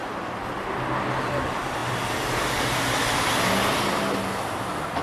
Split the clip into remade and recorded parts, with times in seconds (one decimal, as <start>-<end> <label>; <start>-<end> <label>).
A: 0.0-5.0 recorded